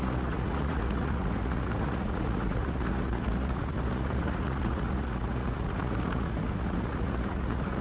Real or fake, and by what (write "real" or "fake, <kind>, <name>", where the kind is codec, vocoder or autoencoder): fake, vocoder, Vocos